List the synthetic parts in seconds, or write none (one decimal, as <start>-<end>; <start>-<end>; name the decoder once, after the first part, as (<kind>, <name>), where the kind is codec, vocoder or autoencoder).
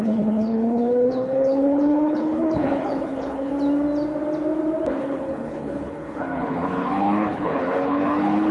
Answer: 0.0-3.5 (codec, HILCodec); 5.0-8.5